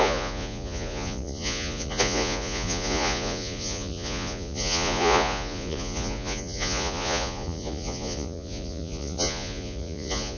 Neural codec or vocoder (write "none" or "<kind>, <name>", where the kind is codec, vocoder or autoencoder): vocoder, Vocos